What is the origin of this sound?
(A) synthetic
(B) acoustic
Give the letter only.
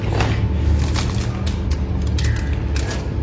B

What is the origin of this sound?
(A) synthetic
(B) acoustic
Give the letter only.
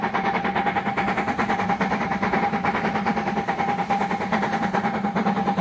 A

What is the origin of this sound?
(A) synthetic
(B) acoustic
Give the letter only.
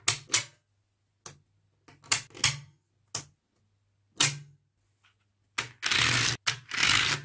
B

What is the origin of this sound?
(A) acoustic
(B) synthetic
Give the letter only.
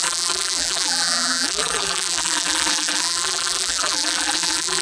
B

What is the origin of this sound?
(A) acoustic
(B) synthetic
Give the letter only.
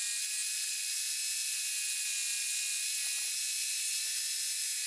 A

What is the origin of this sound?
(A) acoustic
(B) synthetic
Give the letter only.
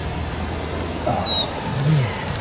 A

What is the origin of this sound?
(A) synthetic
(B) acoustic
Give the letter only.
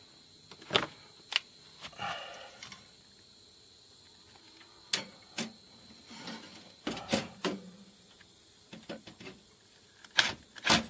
B